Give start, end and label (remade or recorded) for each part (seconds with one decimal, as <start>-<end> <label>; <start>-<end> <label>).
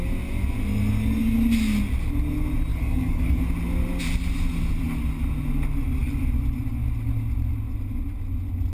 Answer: 0.0-2.7 recorded; 2.7-3.4 remade; 3.4-8.7 recorded